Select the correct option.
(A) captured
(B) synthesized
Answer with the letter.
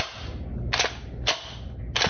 A